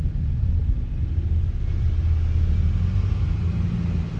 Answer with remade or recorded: recorded